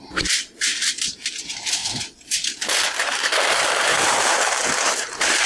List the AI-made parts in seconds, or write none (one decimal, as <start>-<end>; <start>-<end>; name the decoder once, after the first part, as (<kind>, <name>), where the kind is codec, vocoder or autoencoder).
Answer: 0.0-1.8 (vocoder, BigVGAN v2); 3.0-5.5